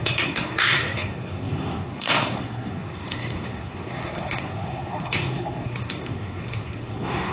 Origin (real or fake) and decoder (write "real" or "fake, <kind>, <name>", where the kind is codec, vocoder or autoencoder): fake, codec, SNAC